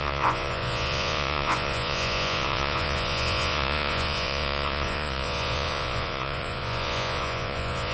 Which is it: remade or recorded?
remade